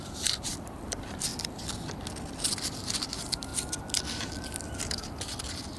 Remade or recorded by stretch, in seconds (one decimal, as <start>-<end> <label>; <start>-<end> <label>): 0.0-1.3 remade; 1.3-2.2 recorded; 2.2-3.5 remade; 3.5-5.8 recorded